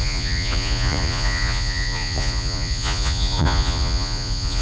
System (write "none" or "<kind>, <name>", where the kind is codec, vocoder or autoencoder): vocoder, Vocos